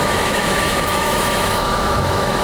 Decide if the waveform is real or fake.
fake